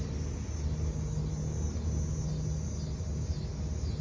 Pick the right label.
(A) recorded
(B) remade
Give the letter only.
A